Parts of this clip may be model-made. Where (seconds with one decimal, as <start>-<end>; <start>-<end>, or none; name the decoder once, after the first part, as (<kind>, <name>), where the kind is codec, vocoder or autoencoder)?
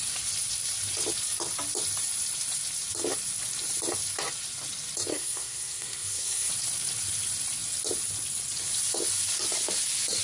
5.1-6.5 (codec, SNAC)